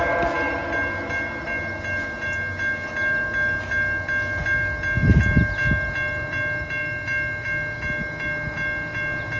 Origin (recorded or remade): recorded